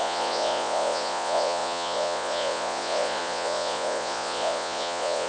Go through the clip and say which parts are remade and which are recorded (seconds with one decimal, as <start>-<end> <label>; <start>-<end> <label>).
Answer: 0.0-5.3 remade

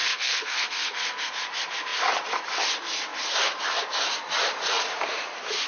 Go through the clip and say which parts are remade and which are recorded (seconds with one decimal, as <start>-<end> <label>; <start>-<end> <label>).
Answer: 0.0-1.3 remade; 1.3-5.7 recorded

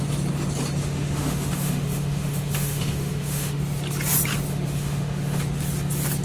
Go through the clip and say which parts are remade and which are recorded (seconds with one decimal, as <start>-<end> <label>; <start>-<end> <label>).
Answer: 0.0-0.8 recorded; 0.8-3.6 remade; 3.6-4.5 recorded; 4.5-5.4 remade; 5.4-6.2 recorded

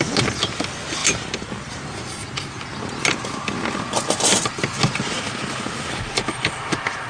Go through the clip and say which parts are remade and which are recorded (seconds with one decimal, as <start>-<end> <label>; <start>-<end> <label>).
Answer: 0.0-7.1 recorded

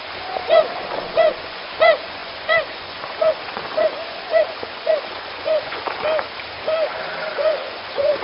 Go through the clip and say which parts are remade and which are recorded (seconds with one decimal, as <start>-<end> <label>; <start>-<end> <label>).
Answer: 0.0-5.8 remade; 5.8-7.3 recorded; 7.3-8.2 remade

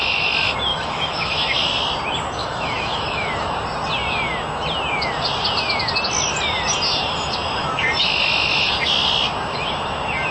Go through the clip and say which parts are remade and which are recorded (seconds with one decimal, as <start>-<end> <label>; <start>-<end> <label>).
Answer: 0.0-0.7 recorded; 0.7-1.3 remade; 1.3-2.4 recorded; 2.4-3.3 remade; 3.3-10.3 recorded

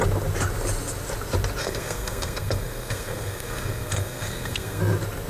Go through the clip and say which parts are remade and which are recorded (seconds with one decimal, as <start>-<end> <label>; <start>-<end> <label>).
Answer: 0.0-1.6 recorded; 1.6-4.8 remade; 4.8-5.3 recorded